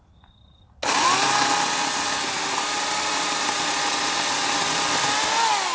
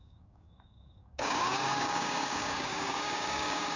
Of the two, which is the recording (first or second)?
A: first